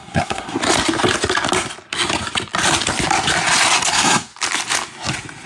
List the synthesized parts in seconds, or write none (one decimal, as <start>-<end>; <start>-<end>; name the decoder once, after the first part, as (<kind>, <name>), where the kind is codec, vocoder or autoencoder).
0.0-0.6 (codec, SNAC); 3.9-4.3